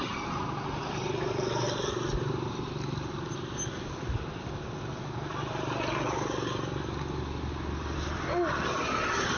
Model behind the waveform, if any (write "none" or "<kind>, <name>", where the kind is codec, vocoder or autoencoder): none